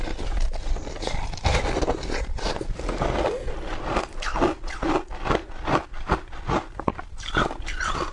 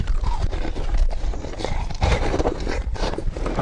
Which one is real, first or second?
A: first